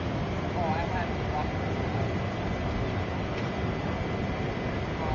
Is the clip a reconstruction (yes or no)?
no